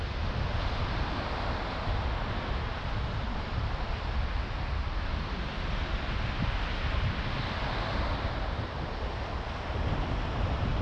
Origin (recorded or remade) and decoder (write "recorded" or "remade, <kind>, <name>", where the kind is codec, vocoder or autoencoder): recorded